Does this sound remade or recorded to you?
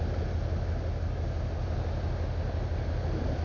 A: recorded